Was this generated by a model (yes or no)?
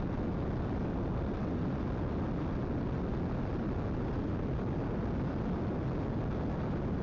no